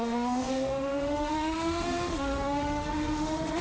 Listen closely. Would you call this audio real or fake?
fake